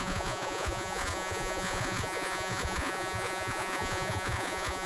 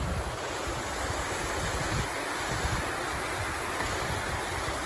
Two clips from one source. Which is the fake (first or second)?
first